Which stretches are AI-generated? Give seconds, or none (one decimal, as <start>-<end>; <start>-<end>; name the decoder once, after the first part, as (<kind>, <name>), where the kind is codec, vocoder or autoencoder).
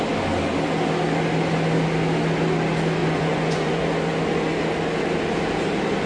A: 3.0-3.8 (vocoder, Vocos)